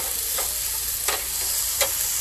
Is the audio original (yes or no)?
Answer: yes